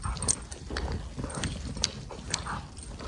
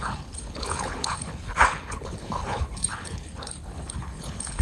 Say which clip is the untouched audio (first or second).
first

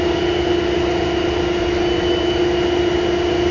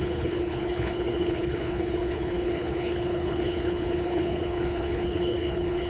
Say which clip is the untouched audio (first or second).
first